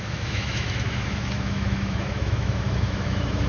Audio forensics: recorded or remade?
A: remade